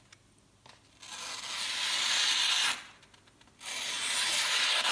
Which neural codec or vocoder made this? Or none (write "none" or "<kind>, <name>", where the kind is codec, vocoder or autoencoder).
none